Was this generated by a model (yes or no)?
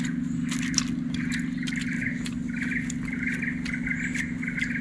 no